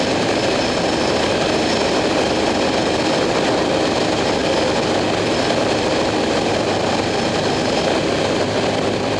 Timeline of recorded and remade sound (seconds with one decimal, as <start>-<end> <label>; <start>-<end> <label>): 0.0-4.4 remade; 4.4-5.6 recorded; 5.6-9.2 remade